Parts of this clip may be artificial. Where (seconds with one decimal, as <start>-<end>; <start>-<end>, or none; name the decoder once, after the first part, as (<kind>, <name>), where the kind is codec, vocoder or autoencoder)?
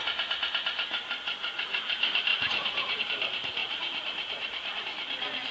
1.4-1.9 (vocoder, Vocos); 2.3-3.0; 3.6-4.8